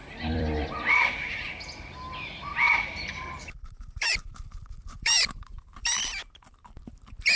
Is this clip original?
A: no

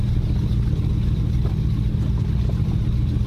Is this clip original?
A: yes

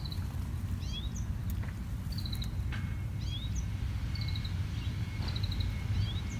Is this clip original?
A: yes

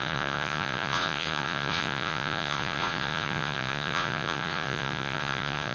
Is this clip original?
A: no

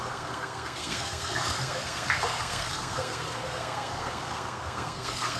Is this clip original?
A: no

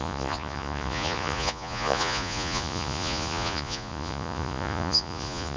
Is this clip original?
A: no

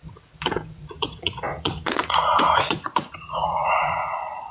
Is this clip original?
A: no